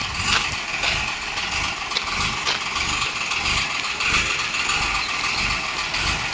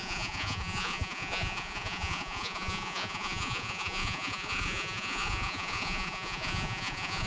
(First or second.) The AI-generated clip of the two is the second